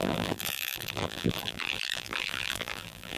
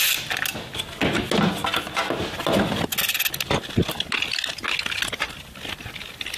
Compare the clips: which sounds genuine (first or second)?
second